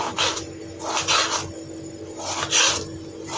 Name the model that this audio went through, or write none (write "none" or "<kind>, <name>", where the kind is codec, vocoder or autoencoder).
none